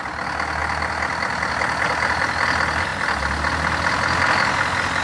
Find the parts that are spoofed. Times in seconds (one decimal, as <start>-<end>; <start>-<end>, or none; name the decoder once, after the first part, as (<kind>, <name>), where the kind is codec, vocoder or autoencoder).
none